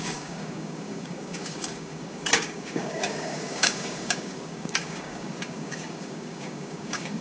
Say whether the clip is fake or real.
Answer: fake